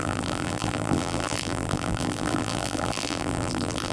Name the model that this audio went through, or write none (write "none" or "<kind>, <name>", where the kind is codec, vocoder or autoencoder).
vocoder, BigVGAN v2